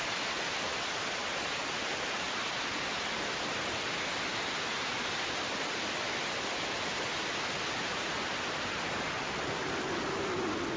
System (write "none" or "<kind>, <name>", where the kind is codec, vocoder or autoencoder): none